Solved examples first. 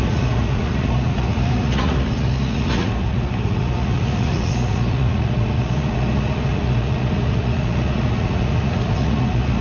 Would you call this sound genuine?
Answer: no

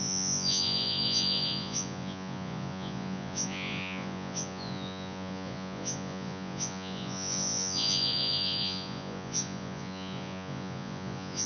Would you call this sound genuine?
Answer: no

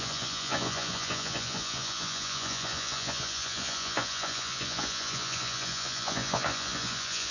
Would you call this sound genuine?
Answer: no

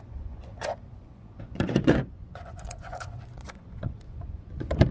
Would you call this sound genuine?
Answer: no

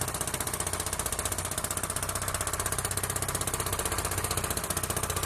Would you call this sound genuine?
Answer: yes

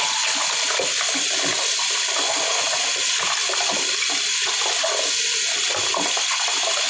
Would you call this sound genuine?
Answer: yes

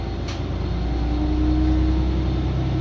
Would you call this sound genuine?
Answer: yes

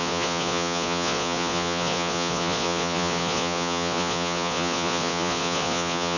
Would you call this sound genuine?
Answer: no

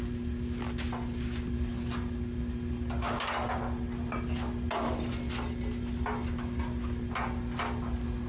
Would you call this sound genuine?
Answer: yes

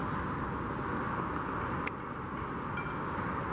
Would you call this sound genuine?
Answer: yes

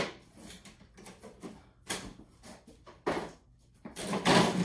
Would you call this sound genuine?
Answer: yes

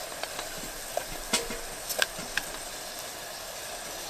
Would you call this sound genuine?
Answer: yes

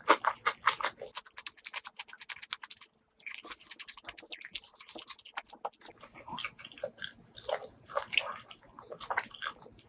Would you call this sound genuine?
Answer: yes